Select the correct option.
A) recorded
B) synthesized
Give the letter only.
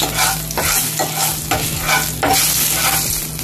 A